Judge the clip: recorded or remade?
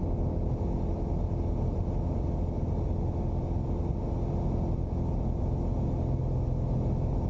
recorded